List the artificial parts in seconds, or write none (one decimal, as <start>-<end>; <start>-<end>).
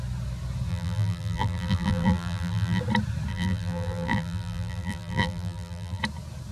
0.7-2.8; 3.3-6.0